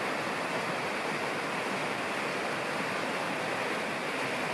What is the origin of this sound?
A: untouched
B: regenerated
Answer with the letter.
A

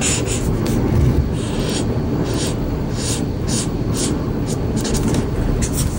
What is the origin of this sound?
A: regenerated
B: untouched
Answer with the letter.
B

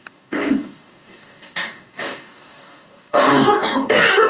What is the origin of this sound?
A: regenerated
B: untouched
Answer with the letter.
A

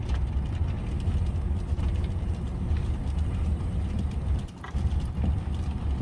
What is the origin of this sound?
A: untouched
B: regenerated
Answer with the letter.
A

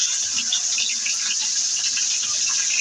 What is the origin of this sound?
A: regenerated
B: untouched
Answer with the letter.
B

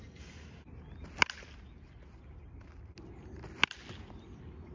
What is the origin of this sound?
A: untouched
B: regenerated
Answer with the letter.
A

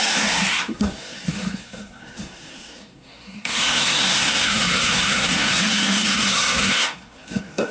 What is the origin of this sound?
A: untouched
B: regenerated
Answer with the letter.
B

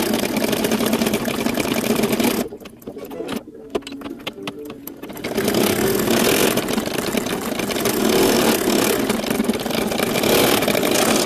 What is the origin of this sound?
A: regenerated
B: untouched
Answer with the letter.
B